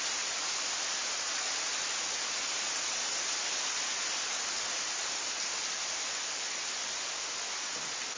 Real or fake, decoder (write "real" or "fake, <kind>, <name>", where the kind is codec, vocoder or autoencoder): real